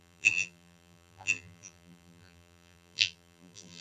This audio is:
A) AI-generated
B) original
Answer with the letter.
A